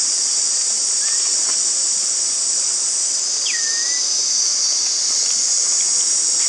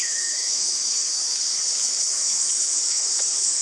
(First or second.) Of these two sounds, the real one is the first